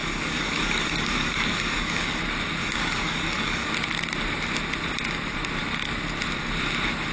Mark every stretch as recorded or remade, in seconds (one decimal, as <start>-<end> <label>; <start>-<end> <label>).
0.0-2.2 remade; 2.2-2.6 recorded; 2.6-3.7 remade; 3.7-7.1 recorded